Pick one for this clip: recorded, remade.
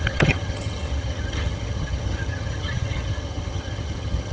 remade